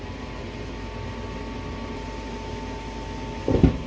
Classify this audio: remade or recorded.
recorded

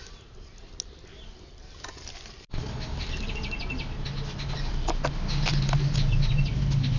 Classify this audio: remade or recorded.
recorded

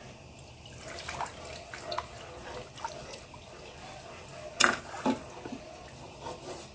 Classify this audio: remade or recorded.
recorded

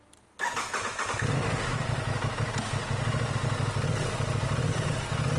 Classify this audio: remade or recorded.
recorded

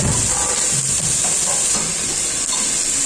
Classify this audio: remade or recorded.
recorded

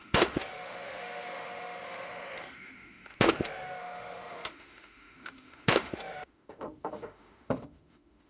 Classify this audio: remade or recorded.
remade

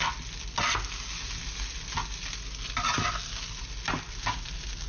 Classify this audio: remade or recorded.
recorded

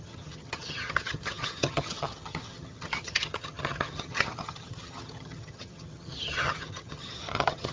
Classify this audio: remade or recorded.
remade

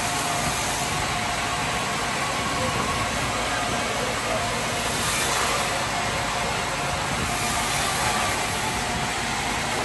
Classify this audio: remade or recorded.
recorded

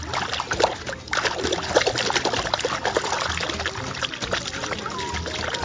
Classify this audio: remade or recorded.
recorded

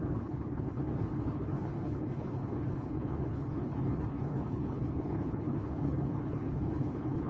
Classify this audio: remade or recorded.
remade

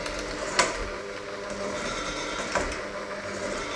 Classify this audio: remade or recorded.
recorded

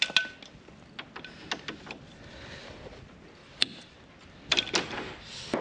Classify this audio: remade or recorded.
recorded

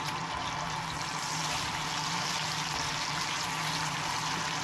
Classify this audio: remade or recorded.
recorded